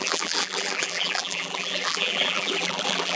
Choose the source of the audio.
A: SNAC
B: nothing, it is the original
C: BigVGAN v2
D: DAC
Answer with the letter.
C